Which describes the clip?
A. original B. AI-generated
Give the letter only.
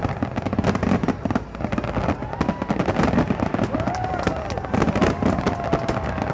A